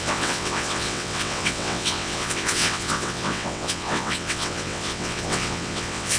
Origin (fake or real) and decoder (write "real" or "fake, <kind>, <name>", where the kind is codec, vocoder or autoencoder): fake, vocoder, WaveNeXt